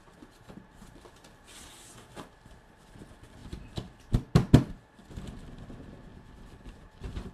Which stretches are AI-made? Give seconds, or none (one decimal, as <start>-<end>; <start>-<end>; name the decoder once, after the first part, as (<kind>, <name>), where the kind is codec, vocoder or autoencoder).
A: 6.1-7.3 (vocoder, BigVGAN v2)